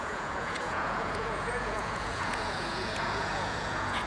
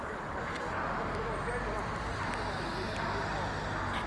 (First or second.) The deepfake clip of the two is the first